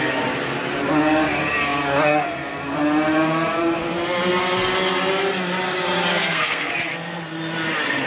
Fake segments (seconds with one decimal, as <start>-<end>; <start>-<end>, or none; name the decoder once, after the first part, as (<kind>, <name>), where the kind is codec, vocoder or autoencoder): 6.1-6.7 (codec, SNAC)